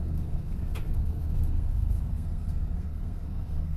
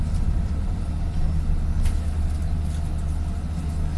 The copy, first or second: first